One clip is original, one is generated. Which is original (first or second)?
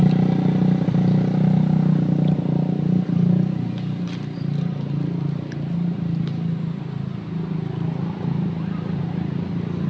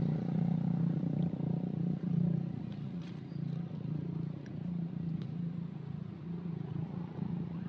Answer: first